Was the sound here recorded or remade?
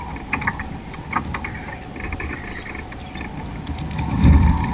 remade